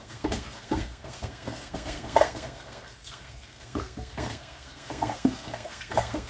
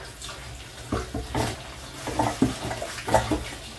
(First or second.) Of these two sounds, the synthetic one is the first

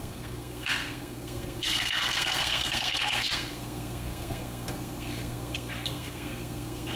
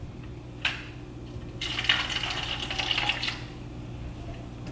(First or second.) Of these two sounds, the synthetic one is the first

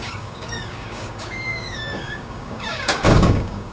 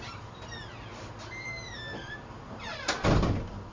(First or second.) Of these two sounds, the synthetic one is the first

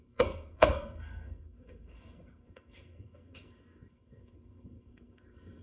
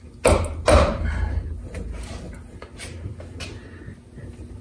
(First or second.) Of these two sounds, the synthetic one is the first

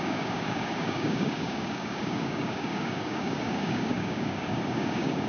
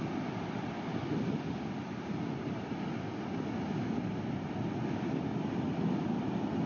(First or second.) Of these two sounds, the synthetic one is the first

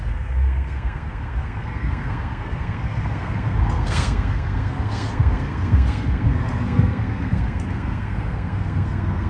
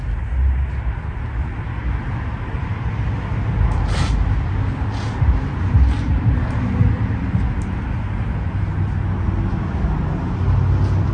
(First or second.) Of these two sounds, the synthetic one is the first